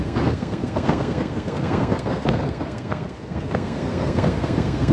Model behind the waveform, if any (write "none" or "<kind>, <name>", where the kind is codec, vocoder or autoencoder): codec, SNAC